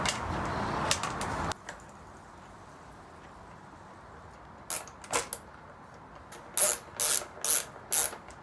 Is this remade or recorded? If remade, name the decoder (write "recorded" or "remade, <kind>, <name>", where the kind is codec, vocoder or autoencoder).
recorded